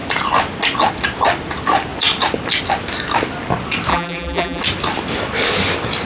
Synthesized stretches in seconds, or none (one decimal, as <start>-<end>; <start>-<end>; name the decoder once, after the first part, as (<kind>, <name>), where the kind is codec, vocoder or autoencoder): 3.9-4.6 (vocoder, BigVGAN v2)